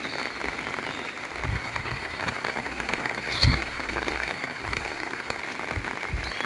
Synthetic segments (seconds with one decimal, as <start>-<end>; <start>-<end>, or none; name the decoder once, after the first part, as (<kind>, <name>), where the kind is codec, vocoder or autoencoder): 1.5-5.4 (codec, SNAC)